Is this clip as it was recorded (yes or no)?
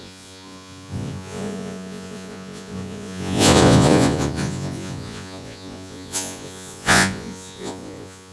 no